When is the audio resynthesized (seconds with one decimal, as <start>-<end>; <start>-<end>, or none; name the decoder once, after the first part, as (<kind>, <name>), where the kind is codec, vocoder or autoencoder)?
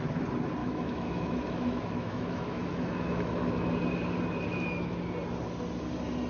0.6-3.7 (autoencoder, DAC-VAE)